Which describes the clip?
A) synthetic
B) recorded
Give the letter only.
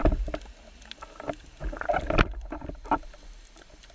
B